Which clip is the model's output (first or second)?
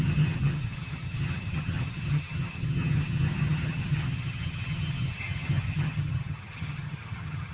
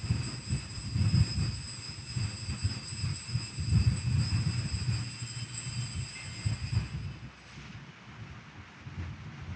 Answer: first